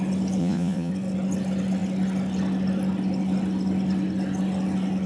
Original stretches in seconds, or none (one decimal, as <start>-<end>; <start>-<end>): 0.0-0.4; 0.9-5.1